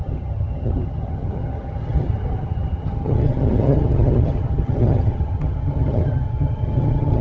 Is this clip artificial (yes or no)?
yes